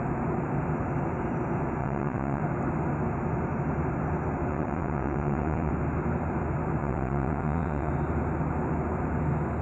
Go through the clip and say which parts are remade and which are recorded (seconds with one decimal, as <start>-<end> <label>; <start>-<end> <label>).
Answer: 0.0-1.8 recorded; 1.8-2.4 remade; 2.4-4.5 recorded; 4.5-5.7 remade; 5.7-6.8 recorded; 6.8-7.9 remade; 7.9-9.6 recorded